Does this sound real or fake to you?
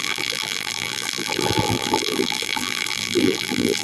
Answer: fake